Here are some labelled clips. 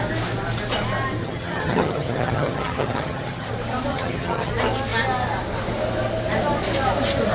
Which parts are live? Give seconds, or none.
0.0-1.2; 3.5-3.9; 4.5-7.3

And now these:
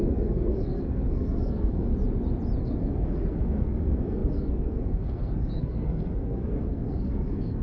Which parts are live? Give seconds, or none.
1.9-2.6

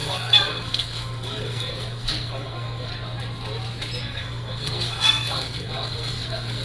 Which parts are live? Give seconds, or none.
2.9-4.0

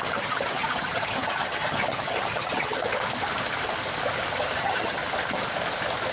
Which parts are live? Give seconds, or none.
2.9-4.6; 5.0-6.1

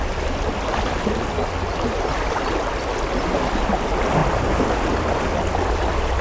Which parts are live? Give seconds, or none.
0.0-6.2